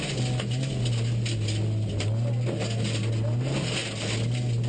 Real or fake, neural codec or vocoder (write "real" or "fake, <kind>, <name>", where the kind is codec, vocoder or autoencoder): real